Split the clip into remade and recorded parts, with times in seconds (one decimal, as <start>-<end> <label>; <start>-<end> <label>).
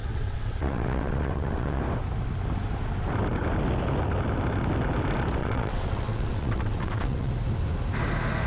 0.0-1.8 remade; 1.8-5.4 recorded; 5.4-7.3 remade; 7.3-8.5 recorded